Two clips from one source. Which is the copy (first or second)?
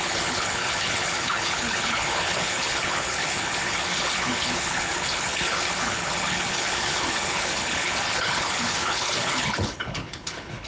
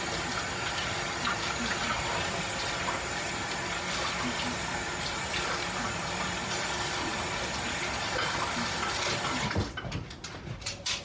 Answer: first